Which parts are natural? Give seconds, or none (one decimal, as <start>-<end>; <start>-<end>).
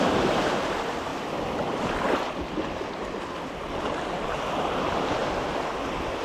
1.1-4.5; 5.2-6.2